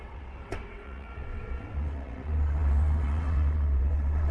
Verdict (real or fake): fake